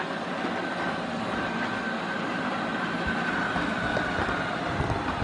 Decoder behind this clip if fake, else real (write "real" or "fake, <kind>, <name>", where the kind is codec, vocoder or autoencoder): real